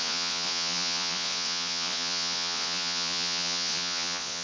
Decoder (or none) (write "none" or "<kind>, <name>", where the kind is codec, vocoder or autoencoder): vocoder, Vocos